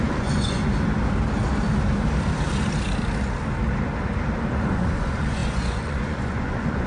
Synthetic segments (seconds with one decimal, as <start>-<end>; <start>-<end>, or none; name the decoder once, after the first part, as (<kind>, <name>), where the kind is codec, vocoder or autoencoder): 0.0-0.6 (vocoder, Vocos); 4.6-6.9